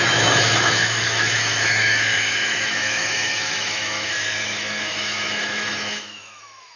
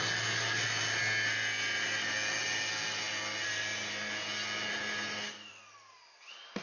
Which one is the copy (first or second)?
first